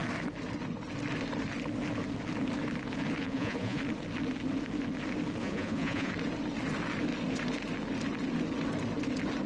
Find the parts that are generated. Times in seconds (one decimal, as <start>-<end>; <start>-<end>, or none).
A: 3.2-3.8; 5.4-6.1